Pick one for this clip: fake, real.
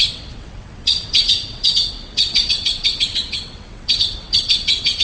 fake